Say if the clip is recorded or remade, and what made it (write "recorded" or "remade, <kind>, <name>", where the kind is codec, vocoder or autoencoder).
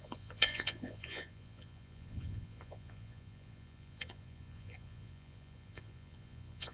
remade, vocoder, Vocos